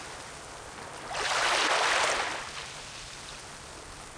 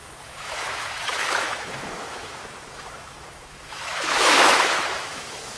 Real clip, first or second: first